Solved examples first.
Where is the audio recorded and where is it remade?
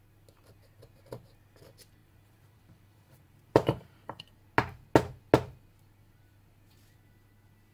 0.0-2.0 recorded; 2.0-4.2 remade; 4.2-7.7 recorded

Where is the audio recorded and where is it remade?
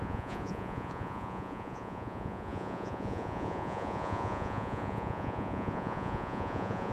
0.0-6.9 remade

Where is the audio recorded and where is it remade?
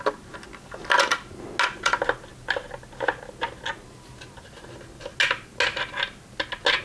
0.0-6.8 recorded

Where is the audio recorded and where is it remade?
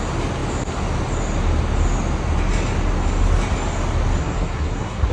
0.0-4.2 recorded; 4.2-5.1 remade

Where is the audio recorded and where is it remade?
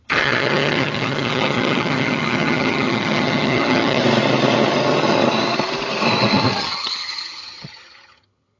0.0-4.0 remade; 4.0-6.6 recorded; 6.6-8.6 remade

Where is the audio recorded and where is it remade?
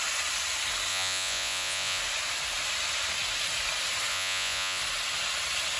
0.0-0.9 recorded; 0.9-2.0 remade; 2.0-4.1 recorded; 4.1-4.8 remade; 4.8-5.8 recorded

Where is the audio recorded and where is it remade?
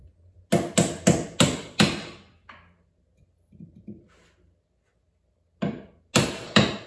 0.0-6.9 recorded